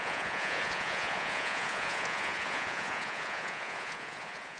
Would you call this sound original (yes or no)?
no